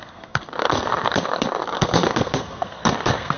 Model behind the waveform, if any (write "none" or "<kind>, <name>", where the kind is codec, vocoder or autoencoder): codec, SNAC